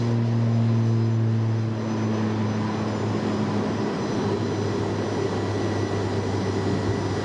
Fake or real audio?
real